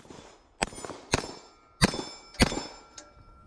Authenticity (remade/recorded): recorded